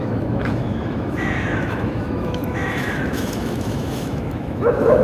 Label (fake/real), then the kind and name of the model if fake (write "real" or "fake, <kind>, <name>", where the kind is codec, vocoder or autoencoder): fake, autoencoder, DAC-VAE